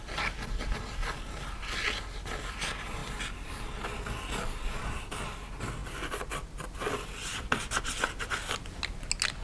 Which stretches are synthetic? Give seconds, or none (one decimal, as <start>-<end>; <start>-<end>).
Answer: none